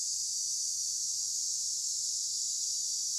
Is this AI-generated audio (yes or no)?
no